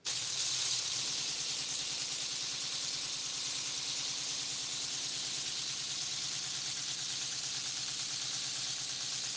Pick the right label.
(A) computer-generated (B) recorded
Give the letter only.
B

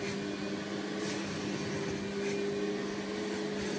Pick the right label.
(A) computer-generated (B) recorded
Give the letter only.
B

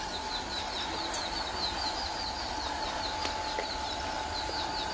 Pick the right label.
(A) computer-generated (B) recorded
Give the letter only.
B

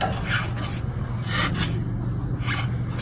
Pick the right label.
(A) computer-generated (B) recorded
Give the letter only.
B